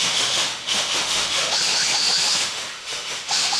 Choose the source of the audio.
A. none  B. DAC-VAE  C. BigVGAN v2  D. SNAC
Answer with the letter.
B